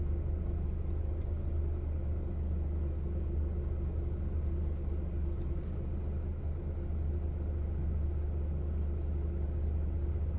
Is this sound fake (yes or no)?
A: no